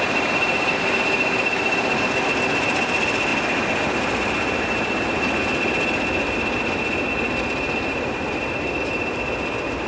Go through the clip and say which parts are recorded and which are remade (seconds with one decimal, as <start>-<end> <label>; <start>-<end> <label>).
0.0-9.9 recorded